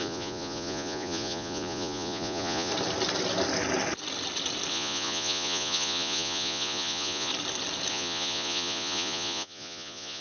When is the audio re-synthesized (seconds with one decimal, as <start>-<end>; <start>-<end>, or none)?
0.0-2.7; 4.7-7.3; 7.9-10.2